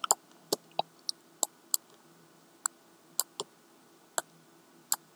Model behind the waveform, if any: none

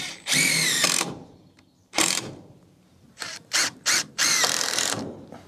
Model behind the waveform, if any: vocoder, BigVGAN v2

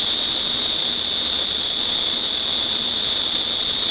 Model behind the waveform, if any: none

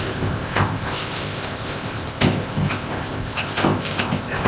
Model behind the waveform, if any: codec, ZipCodec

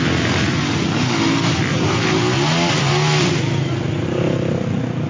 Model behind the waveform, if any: none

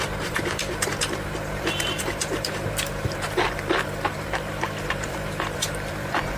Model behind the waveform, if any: vocoder, BigVGAN v2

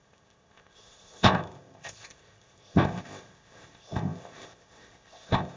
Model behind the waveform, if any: codec, ZipCodec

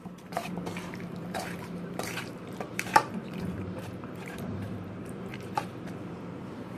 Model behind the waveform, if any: vocoder, BigVGAN v2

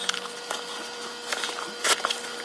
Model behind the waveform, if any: none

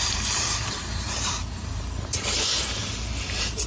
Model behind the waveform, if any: vocoder, BigVGAN v2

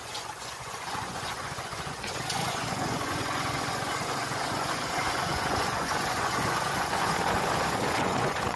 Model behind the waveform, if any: vocoder, Vocos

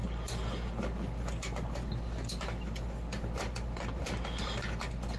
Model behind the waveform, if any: none